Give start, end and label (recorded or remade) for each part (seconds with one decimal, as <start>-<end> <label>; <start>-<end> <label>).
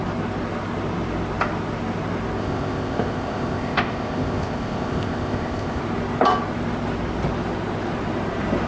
0.0-2.4 recorded; 2.4-5.8 remade; 5.8-8.7 recorded